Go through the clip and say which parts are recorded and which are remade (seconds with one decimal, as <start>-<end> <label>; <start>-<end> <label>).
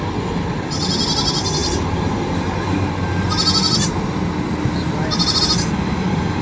0.0-6.4 recorded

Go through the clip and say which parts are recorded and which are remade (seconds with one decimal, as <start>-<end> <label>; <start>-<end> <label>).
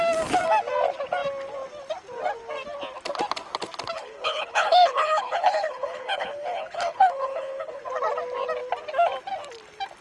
0.0-4.0 recorded; 4.0-7.8 remade; 7.8-10.0 recorded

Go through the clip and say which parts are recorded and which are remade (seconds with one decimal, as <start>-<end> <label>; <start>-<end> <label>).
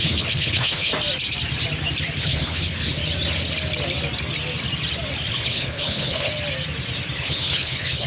0.0-0.9 remade; 0.9-2.2 recorded; 2.2-3.0 remade; 3.0-5.3 recorded; 5.3-6.3 remade; 6.3-7.2 recorded; 7.2-8.1 remade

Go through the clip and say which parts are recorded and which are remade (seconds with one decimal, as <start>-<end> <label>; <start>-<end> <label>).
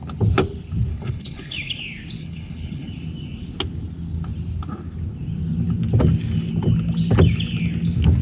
0.0-0.9 recorded; 0.9-1.8 remade; 1.8-2.2 recorded; 2.2-2.9 remade; 2.9-8.2 recorded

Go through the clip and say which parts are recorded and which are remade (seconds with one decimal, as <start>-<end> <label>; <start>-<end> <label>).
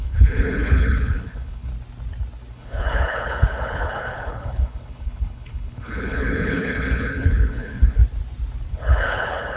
0.0-1.7 remade; 1.7-2.5 recorded; 2.5-8.0 remade; 8.0-8.7 recorded; 8.7-9.6 remade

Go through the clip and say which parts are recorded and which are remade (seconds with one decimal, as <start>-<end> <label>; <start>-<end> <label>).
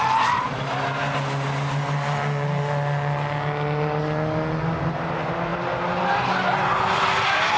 0.0-7.6 recorded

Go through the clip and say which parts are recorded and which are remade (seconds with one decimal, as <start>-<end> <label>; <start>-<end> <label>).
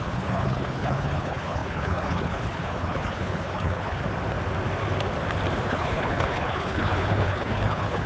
0.0-4.0 remade; 4.0-5.7 recorded; 5.7-8.1 remade